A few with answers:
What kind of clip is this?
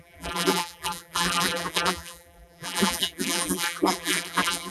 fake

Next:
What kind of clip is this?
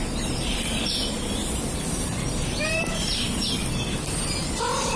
fake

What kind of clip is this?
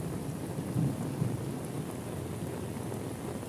real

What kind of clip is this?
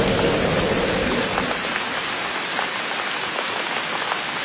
real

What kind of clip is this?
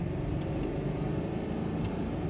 fake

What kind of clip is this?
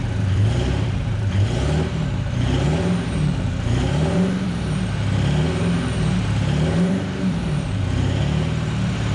fake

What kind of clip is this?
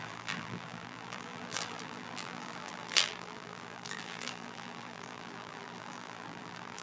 fake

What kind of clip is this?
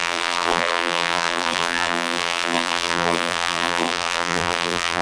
fake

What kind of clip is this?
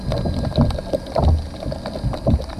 real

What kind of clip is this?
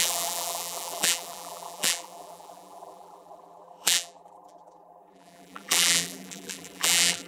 fake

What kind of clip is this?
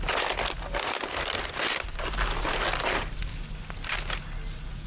real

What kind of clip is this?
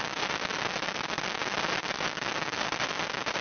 real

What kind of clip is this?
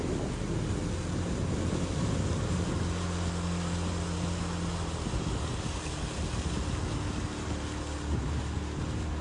real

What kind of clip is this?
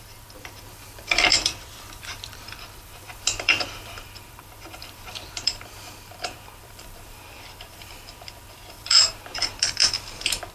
fake